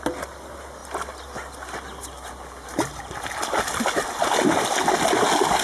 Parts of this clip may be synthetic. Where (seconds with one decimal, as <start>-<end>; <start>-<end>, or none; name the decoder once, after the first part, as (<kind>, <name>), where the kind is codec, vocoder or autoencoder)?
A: none